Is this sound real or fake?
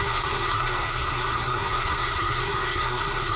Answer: fake